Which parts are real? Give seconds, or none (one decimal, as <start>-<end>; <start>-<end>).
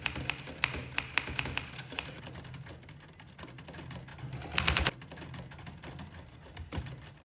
0.0-7.4